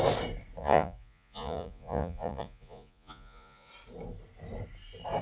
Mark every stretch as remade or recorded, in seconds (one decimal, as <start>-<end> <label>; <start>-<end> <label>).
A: 0.0-0.6 recorded; 0.6-3.7 remade; 3.7-5.2 recorded